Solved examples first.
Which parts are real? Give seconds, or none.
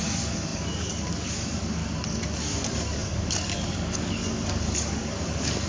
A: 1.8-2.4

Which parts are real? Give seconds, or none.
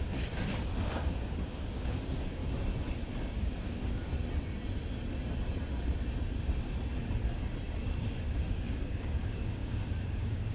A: 2.4-3.1; 4.1-8.0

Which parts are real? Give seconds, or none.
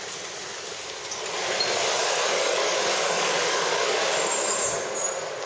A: 0.0-2.0; 4.0-5.5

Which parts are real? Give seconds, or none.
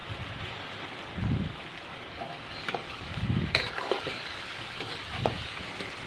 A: 0.0-1.9; 5.6-6.1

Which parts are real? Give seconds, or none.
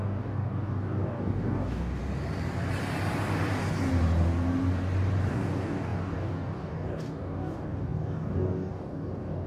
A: 2.0-5.3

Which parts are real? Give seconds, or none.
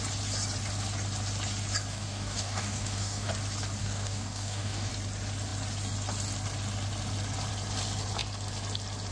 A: 0.0-1.9; 3.3-3.8; 4.9-9.1